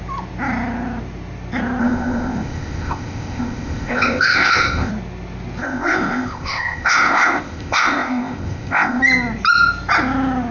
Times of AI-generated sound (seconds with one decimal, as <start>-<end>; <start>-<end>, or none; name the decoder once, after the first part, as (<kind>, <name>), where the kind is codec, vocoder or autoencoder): 1.8-4.9 (codec, ZipCodec); 5.6-9.0